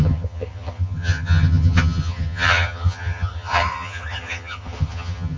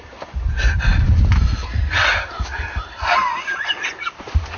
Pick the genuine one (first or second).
second